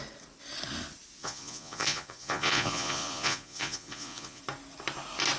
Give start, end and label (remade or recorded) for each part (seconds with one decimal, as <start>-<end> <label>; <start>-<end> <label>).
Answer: 0.0-1.2 recorded; 1.2-4.4 remade; 4.4-5.4 recorded